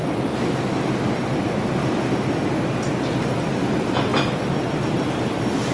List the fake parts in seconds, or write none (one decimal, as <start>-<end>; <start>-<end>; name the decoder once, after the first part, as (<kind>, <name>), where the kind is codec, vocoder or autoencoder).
none